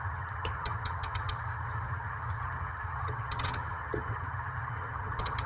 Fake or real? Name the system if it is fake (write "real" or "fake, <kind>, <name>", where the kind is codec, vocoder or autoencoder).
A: fake, vocoder, HiFi-GAN